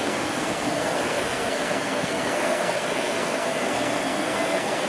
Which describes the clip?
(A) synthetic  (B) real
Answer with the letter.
A